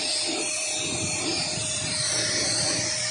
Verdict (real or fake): fake